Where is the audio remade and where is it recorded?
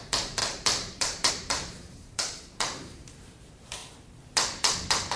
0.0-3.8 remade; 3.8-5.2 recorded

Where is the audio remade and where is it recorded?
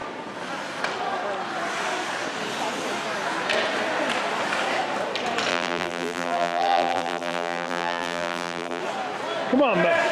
0.0-5.5 recorded; 5.5-8.8 remade; 8.8-10.1 recorded